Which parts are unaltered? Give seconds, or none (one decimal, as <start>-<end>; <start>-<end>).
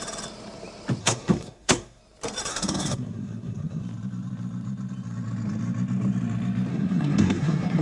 0.0-1.0; 2.0-2.5; 3.8-6.7